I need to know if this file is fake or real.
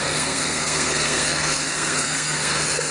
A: fake